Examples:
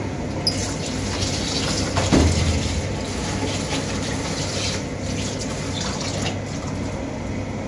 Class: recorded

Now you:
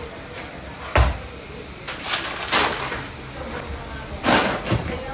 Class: recorded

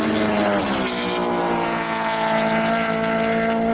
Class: recorded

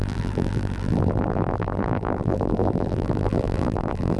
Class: remade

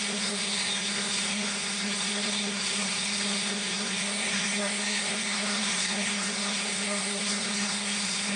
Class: remade